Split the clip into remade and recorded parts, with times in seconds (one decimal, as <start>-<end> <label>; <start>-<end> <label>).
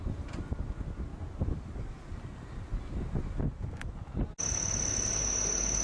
0.0-5.8 recorded